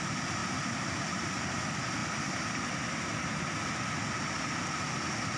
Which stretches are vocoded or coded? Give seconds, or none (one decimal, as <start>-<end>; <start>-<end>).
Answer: 0.4-1.1